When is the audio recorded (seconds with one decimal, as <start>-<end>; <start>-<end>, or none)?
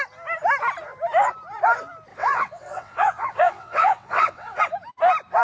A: 0.0-2.1; 4.6-5.4